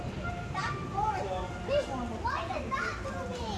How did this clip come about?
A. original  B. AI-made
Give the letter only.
A